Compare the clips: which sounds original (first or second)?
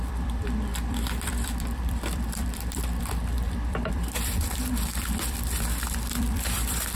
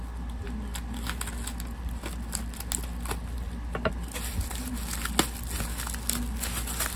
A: second